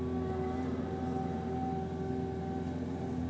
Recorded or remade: recorded